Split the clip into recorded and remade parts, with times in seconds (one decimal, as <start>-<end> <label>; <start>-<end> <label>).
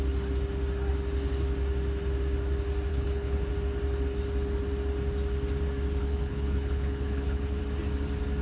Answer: 0.0-2.9 recorded; 2.9-3.5 remade; 3.5-6.0 recorded; 6.0-7.6 remade; 7.6-8.4 recorded